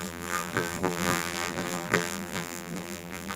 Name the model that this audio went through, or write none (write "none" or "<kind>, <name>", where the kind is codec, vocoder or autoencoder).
vocoder, BigVGAN v2